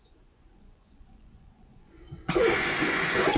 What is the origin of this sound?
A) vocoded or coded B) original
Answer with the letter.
A